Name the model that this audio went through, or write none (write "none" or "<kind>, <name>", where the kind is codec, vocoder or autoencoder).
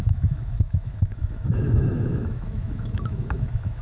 autoencoder, DAC-VAE